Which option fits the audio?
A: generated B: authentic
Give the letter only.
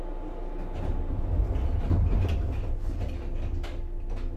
B